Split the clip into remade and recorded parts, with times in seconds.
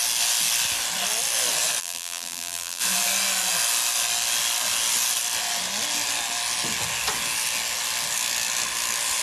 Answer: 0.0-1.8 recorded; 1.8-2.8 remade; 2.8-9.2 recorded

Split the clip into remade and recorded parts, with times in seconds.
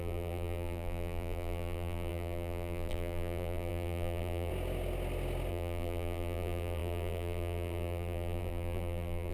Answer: 0.0-4.5 remade; 4.5-5.5 recorded; 5.5-9.3 remade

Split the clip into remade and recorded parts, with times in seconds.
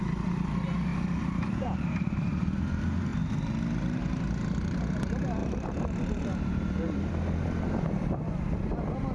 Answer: 0.0-0.9 recorded; 0.9-2.7 remade; 2.7-5.4 recorded; 5.4-7.1 remade; 7.1-9.1 recorded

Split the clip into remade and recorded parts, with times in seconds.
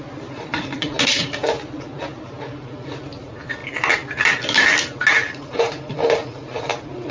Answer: 0.0-3.6 remade; 3.6-5.6 recorded; 5.6-7.1 remade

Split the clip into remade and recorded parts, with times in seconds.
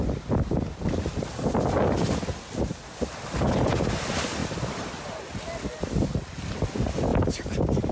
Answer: 0.0-7.9 recorded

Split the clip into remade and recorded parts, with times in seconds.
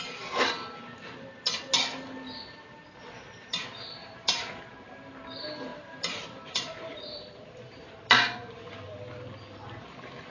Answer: 0.0-4.0 recorded; 4.0-4.5 remade; 4.5-5.7 recorded; 5.7-9.0 remade; 9.0-10.3 recorded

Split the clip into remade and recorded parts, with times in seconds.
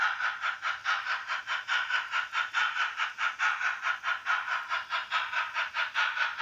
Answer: 0.0-2.6 recorded; 2.6-3.3 remade; 3.3-6.4 recorded